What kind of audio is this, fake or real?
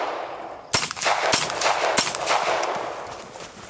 real